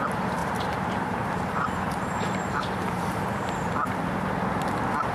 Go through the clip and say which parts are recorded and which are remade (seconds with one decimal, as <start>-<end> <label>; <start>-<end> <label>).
0.0-0.4 recorded; 0.4-3.5 remade; 3.5-5.1 recorded

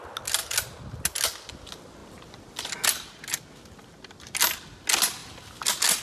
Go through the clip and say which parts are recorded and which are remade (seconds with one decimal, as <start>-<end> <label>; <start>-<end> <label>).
0.0-6.0 recorded

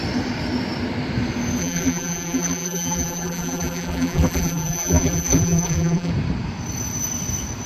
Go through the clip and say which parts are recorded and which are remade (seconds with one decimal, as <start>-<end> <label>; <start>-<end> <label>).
0.0-1.6 recorded; 1.6-6.1 remade; 6.1-7.7 recorded

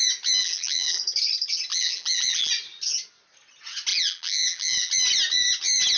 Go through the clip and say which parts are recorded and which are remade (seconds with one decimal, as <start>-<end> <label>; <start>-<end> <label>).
0.0-0.4 recorded; 0.4-1.0 remade; 1.0-1.7 recorded; 1.7-2.5 remade; 2.5-3.9 recorded; 3.9-4.9 remade; 4.9-6.0 recorded